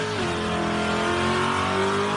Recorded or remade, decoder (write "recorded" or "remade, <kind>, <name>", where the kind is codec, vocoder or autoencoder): recorded